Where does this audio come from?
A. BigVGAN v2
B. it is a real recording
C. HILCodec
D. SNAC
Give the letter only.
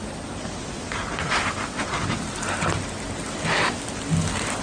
B